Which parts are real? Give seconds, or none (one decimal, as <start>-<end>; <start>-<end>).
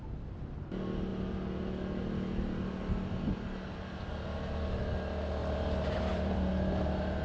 0.0-5.4; 6.5-7.2